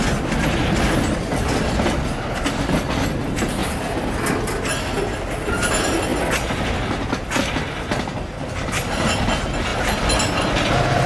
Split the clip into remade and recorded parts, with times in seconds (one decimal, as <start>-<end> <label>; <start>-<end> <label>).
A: 0.0-11.1 recorded

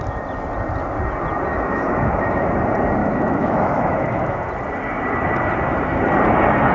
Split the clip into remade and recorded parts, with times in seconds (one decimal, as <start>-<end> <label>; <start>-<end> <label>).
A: 0.0-1.5 recorded; 1.5-2.5 remade; 2.5-3.0 recorded; 3.0-4.5 remade; 4.5-6.7 recorded

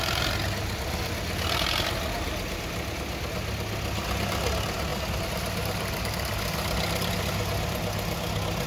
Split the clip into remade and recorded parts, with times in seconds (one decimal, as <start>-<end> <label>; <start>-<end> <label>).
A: 0.0-8.7 recorded

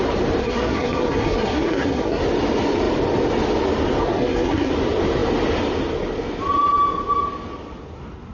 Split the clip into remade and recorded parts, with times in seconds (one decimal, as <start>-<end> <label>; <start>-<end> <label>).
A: 0.0-0.4 recorded; 0.4-2.2 remade; 2.2-4.0 recorded; 4.0-4.7 remade; 4.7-8.3 recorded

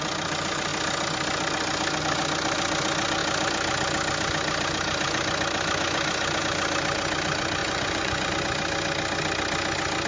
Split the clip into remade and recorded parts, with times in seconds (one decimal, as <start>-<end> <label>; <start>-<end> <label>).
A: 0.0-7.6 recorded; 7.6-8.3 remade; 8.3-10.1 recorded

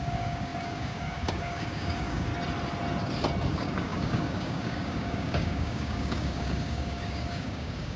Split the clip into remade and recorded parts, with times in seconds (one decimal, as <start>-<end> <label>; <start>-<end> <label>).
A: 0.0-2.3 remade; 2.3-3.5 recorded; 3.5-8.0 remade